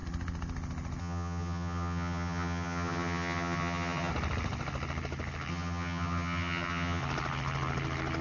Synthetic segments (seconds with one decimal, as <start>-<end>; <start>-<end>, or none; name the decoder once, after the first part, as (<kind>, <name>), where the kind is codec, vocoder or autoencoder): 1.0-4.1 (vocoder, HiFi-GAN); 5.5-7.0